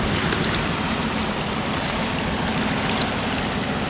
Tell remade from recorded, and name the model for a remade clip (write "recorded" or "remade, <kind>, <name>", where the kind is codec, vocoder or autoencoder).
recorded